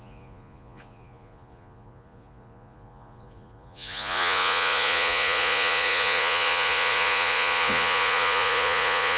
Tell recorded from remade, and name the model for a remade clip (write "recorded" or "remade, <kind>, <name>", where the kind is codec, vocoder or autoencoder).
remade, vocoder, Vocos